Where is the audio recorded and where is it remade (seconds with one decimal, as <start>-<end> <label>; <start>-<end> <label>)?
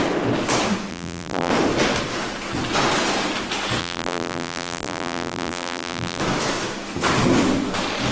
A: 0.0-0.9 recorded; 0.9-1.5 remade; 1.5-3.8 recorded; 3.8-6.2 remade; 6.2-8.1 recorded